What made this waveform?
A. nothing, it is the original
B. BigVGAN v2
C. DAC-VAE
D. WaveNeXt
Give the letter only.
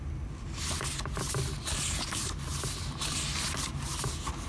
A